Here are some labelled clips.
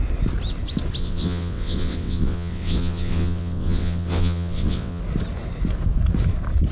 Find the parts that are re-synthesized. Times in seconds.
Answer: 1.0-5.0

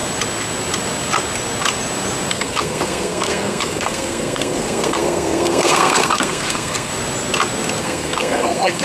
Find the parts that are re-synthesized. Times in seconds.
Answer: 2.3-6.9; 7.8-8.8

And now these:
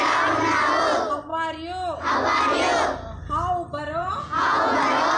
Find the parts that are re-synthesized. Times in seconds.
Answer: 4.0-4.8

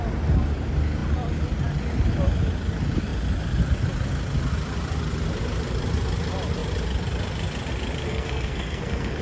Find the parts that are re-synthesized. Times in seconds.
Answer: 8.1-9.2

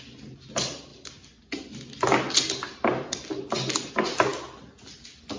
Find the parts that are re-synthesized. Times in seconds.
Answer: none

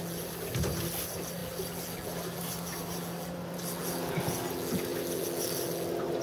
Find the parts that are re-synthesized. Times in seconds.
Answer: none

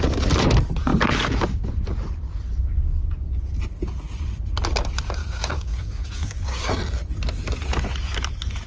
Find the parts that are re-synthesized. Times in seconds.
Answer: 5.2-6.7